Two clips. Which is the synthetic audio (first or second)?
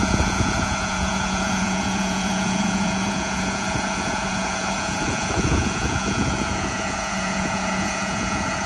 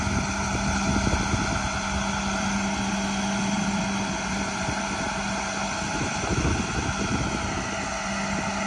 first